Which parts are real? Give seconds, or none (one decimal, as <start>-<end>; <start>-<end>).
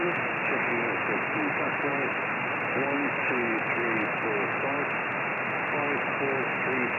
0.0-7.0